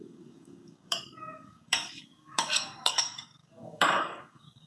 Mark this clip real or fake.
fake